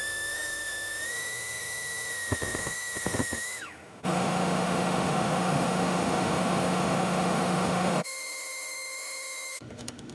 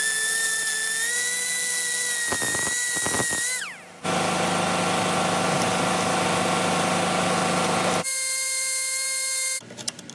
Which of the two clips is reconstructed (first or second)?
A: first